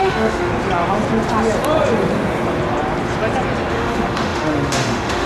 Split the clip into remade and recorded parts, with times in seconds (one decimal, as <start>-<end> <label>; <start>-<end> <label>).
0.0-0.5 remade; 0.5-3.7 recorded; 3.7-5.3 remade